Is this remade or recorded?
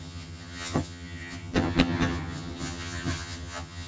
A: remade